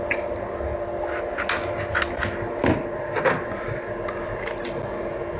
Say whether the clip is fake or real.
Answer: real